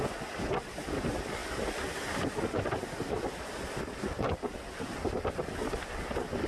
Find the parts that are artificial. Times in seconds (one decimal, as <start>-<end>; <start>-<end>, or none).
none